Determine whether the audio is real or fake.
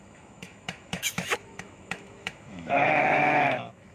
fake